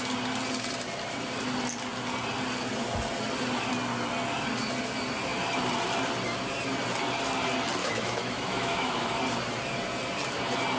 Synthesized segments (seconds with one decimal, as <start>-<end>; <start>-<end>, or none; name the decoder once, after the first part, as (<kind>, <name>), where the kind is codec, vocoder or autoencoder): 7.8-9.2 (autoencoder, DAC-VAE)